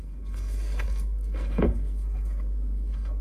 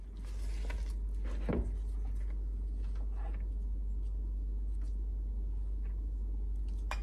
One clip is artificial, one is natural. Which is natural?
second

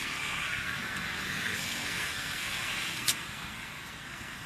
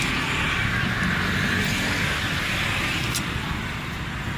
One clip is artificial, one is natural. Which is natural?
second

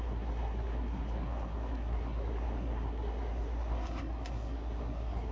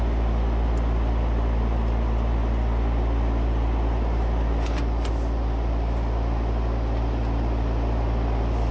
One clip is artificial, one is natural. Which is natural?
second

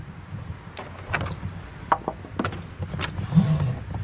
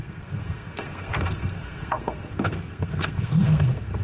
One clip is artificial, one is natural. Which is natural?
first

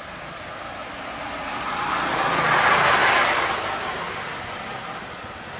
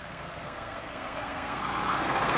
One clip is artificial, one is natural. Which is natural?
first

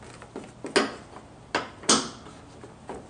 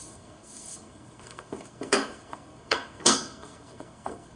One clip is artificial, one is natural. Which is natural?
first